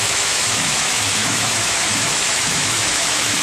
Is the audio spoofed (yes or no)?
yes